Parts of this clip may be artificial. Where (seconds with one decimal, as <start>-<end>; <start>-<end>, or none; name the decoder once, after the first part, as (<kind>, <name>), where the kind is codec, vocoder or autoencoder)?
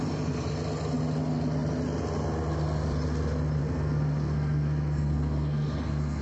3.6-6.2 (codec, SNAC)